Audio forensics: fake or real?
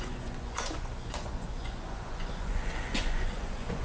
fake